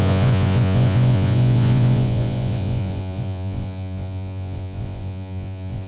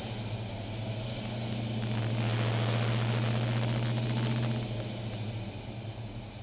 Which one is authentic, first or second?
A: second